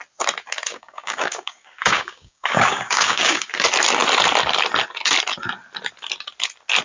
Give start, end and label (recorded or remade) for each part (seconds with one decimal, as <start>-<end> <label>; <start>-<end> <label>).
0.0-0.7 recorded; 0.7-3.5 remade; 3.5-6.8 recorded